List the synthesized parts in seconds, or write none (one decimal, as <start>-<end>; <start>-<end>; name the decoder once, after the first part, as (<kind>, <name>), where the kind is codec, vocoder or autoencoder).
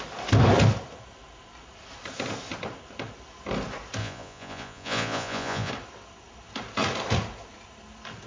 4.0-5.7 (vocoder, Vocos)